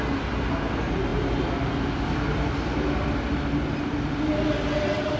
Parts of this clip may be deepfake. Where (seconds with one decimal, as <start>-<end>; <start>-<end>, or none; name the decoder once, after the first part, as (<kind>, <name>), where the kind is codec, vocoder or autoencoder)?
none